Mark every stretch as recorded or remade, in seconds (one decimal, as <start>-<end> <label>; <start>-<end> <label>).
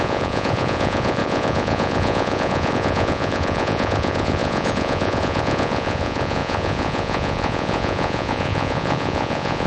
0.0-9.7 remade